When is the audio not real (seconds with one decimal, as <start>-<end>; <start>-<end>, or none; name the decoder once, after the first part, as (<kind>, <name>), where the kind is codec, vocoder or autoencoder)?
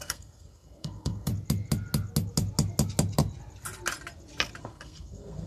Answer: 0.0-1.3 (codec, SNAC); 4.6-5.5